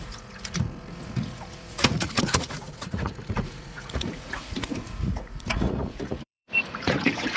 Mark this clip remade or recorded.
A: remade